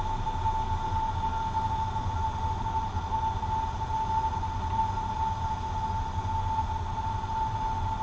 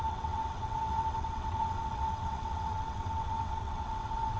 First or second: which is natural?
first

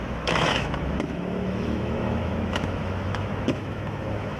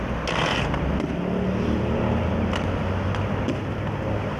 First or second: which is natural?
second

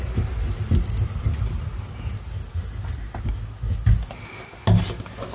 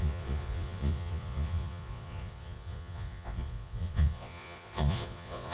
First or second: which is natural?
first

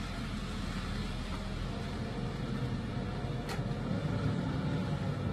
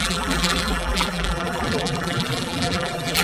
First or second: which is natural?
first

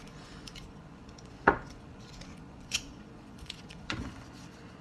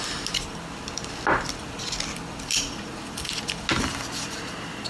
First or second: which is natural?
second